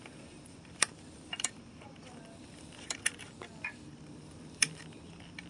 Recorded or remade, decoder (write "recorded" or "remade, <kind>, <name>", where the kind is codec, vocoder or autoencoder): remade, vocoder, BigVGAN v2